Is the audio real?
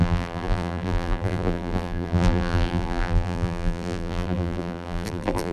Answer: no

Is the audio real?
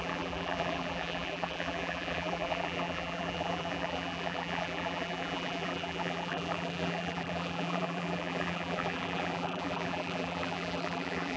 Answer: no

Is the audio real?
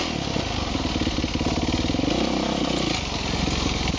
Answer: yes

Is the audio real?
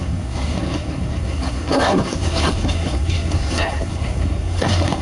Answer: no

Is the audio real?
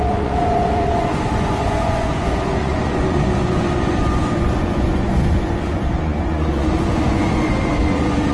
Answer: no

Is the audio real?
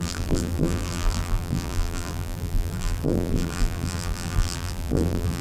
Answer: no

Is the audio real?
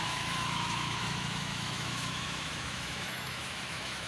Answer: no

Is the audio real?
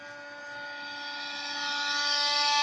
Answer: yes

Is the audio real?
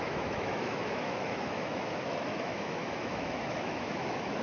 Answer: no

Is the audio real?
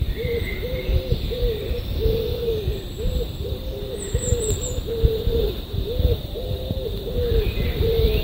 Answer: no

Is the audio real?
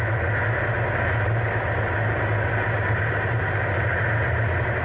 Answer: yes